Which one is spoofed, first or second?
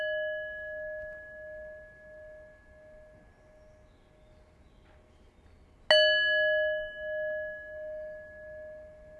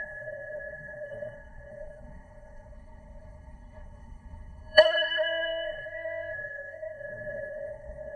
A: second